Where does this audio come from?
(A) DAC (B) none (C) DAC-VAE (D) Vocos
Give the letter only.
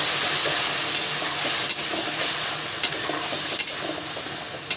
B